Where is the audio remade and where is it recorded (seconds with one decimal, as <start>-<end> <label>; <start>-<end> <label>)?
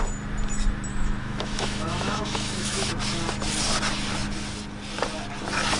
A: 0.0-0.9 recorded; 0.9-2.9 remade; 2.9-5.8 recorded